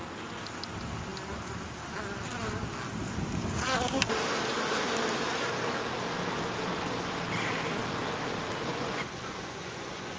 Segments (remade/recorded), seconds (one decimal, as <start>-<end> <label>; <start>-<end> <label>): 0.0-8.7 recorded; 8.7-10.2 remade